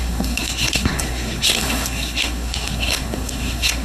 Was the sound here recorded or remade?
remade